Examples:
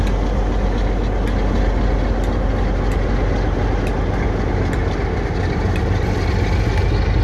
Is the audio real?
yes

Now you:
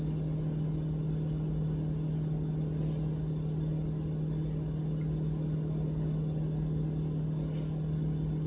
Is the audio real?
yes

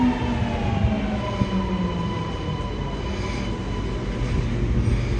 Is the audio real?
yes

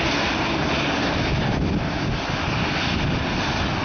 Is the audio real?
yes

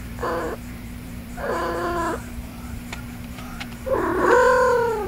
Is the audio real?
no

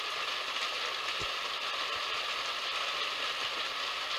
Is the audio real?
yes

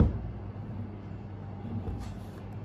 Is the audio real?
no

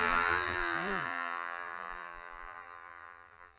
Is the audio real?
no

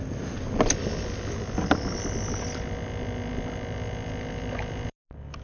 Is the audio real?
yes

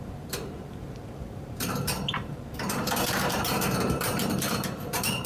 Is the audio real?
no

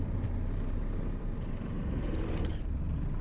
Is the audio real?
no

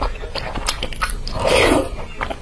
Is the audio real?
yes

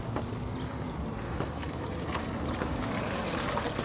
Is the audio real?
yes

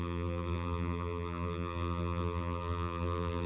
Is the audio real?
no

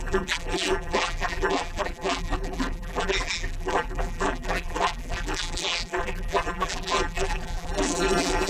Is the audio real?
no